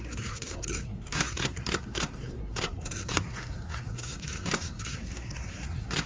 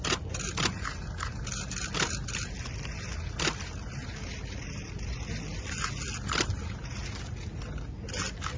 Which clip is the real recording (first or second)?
second